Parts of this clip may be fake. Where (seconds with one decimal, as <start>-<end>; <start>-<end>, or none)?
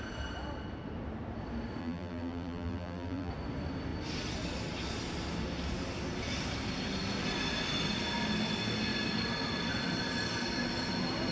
1.8-3.3